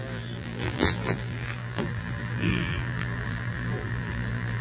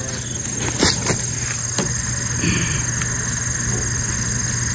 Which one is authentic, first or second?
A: second